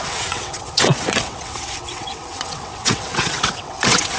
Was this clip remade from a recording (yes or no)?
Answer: yes